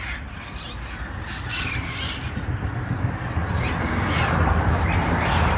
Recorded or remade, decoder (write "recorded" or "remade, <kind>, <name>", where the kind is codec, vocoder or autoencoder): recorded